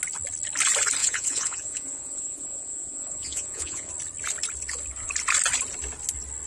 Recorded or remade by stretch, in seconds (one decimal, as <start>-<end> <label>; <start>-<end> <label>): 0.0-1.0 recorded; 1.0-3.9 remade; 3.9-6.5 recorded